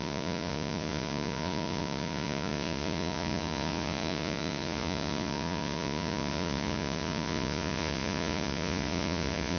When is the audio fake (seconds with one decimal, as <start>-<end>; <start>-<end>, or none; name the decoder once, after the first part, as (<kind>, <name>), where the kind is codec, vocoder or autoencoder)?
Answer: 0.0-9.6 (vocoder, Vocos)